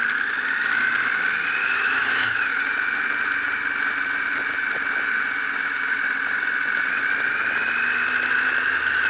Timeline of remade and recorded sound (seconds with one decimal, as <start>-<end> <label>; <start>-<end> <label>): 0.0-1.6 recorded; 1.6-2.6 remade; 2.6-9.1 recorded